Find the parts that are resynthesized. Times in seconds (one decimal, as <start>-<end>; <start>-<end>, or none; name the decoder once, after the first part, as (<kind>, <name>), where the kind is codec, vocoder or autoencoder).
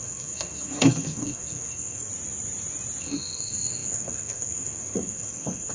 0.0-2.1 (codec, SNAC); 3.0-5.7